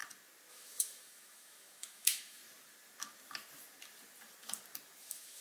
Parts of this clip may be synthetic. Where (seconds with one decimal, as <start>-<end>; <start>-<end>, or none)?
0.5-2.4; 5.0-5.4